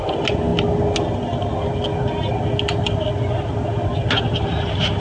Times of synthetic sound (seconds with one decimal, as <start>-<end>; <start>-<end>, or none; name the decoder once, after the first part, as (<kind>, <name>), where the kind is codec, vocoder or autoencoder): none